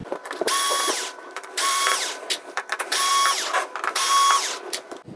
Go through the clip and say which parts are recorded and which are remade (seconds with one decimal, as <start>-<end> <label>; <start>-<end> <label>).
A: 0.0-3.1 remade; 3.1-5.2 recorded